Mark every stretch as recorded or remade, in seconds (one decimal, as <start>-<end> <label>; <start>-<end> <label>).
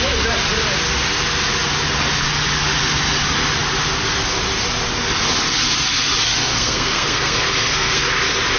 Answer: 0.0-6.3 recorded; 6.3-8.0 remade; 8.0-8.6 recorded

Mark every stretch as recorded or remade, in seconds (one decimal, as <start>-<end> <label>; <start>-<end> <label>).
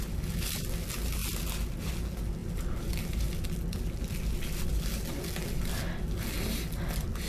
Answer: 0.0-2.4 recorded; 2.4-3.2 remade; 3.2-7.3 recorded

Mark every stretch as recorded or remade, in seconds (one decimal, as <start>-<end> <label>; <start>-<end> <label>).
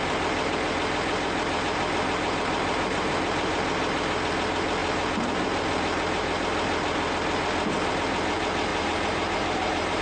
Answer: 0.0-8.7 recorded; 8.7-10.0 remade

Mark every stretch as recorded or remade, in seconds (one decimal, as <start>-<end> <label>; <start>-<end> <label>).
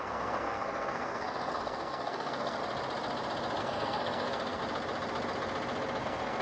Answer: 0.0-2.6 remade; 2.6-3.6 recorded; 3.6-4.6 remade; 4.6-6.0 recorded; 6.0-6.4 remade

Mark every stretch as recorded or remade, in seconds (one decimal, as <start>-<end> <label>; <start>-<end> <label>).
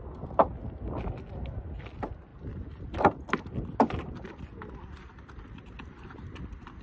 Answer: 0.0-6.8 recorded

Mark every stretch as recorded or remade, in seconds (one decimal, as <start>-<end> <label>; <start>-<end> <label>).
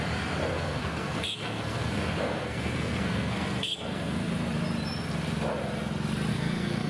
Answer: 0.0-0.5 recorded; 0.5-4.3 remade; 4.3-6.3 recorded; 6.3-6.9 remade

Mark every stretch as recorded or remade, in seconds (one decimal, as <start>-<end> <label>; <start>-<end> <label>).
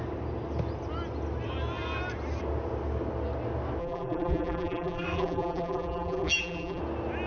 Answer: 0.0-3.8 recorded; 3.8-6.8 remade; 6.8-7.3 recorded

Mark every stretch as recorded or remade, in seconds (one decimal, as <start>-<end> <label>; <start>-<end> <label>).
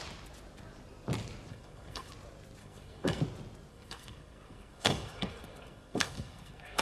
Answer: 0.0-1.5 recorded; 1.5-2.1 remade; 2.1-2.6 recorded; 2.6-3.2 remade; 3.2-3.7 recorded; 3.7-6.8 remade